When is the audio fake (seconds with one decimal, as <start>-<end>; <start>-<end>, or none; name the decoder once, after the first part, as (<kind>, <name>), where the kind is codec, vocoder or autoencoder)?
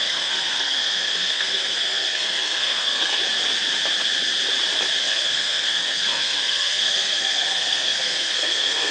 0.0-3.2 (codec, SNAC); 5.0-8.9